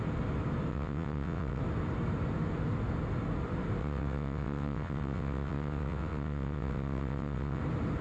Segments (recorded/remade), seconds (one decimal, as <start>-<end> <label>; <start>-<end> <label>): 0.0-0.7 recorded; 0.7-1.6 remade; 1.6-3.8 recorded; 3.8-7.6 remade; 7.6-8.0 recorded